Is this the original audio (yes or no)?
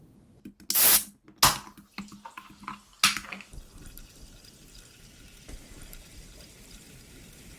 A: yes